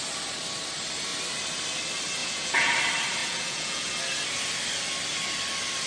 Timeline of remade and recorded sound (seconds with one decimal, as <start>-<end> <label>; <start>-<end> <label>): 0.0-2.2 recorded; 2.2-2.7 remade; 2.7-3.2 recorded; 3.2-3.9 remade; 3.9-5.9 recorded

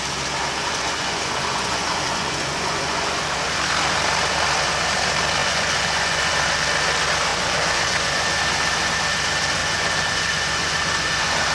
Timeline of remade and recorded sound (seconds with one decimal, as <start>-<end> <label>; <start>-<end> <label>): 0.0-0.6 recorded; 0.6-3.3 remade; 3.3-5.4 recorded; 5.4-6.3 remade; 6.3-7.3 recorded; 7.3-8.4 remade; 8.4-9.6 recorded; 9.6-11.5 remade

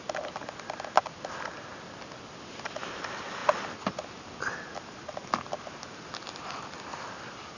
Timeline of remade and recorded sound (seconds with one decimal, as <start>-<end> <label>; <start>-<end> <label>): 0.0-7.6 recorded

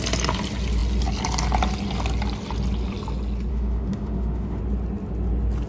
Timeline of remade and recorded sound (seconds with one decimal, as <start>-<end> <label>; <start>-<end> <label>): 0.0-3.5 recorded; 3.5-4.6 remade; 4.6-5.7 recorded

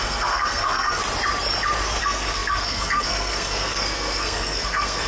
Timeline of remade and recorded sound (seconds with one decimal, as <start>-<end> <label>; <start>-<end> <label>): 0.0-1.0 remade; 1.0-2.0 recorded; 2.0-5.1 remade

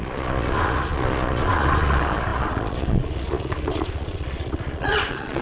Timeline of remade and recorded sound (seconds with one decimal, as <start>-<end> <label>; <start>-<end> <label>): 0.0-5.4 remade

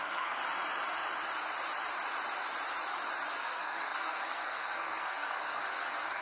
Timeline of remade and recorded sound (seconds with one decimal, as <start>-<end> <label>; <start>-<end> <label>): 0.0-0.4 remade; 0.4-3.4 recorded; 3.4-6.2 remade